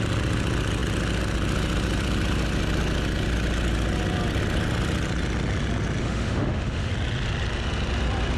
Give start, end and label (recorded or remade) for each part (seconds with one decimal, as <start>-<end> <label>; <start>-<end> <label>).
0.0-6.0 recorded; 6.0-6.9 remade; 6.9-8.4 recorded